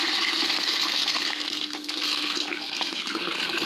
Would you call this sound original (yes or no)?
no